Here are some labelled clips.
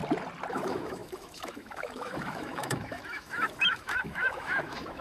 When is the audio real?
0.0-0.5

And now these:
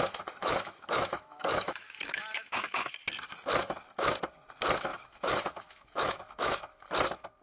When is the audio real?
0.0-0.4; 2.9-4.9; 6.8-7.4

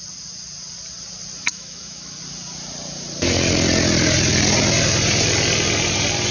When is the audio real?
0.0-1.5; 2.2-6.3